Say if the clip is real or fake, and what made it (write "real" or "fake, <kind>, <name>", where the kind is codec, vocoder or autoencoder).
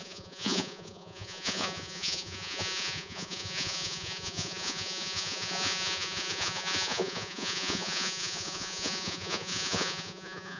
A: fake, vocoder, Vocos